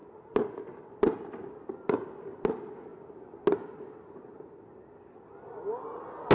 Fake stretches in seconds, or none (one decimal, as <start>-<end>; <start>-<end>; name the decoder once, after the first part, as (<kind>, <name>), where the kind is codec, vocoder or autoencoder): none